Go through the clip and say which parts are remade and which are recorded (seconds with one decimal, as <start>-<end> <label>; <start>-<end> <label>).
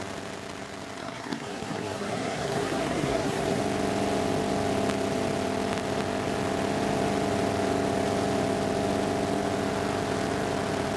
0.0-1.0 recorded; 1.0-3.6 remade; 3.6-11.0 recorded